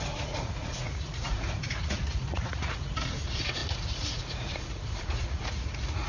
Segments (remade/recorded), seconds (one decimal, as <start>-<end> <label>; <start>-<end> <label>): 0.0-6.1 remade